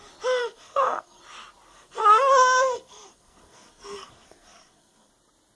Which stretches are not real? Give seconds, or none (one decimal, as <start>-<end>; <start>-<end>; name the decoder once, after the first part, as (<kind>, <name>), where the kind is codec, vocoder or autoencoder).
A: 0.4-1.2 (codec, SNAC); 1.7-5.1